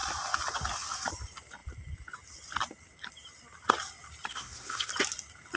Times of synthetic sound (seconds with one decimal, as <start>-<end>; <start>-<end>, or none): 4.3-4.9